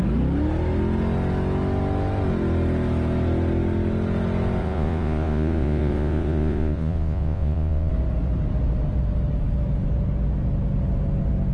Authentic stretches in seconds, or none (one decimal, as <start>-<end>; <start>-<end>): 0.0-4.6; 7.9-11.5